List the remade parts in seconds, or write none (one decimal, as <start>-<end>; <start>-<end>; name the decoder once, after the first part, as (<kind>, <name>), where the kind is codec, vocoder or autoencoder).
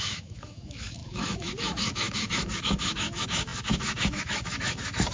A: 0.0-5.1 (autoencoder, DAC-VAE)